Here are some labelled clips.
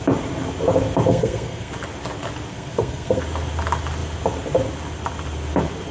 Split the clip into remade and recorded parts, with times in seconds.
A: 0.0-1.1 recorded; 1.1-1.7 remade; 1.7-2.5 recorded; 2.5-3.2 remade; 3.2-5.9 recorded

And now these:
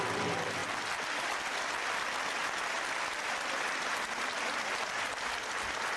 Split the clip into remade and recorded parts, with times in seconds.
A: 0.0-6.0 recorded

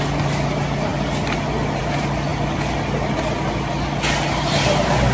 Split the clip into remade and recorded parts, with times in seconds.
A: 0.0-5.1 recorded

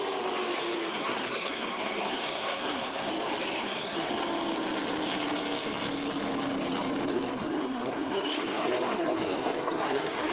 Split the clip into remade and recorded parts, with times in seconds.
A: 0.0-0.9 recorded; 0.9-3.1 remade; 3.1-3.6 recorded; 3.6-4.1 remade; 4.1-7.1 recorded; 7.1-10.3 remade

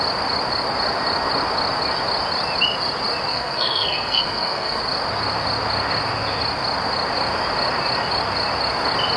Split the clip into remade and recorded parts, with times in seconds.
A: 0.0-3.3 recorded; 3.3-4.8 remade; 4.8-9.2 recorded

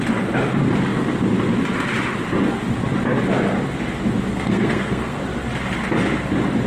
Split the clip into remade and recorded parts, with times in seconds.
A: 0.0-4.3 recorded; 4.3-5.2 remade; 5.2-6.7 recorded

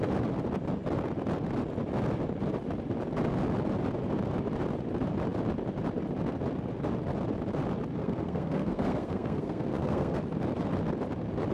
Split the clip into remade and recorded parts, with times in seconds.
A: 0.0-8.0 recorded; 8.0-10.2 remade; 10.2-11.5 recorded